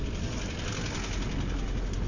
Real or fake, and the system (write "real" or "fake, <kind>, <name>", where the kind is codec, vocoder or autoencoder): real